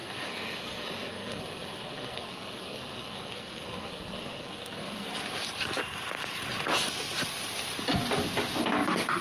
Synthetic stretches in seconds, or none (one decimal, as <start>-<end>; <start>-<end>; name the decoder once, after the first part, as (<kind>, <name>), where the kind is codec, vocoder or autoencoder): 0.0-5.2 (codec, SNAC)